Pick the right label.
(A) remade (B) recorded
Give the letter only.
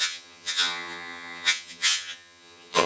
A